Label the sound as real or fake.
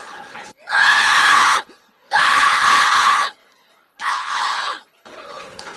fake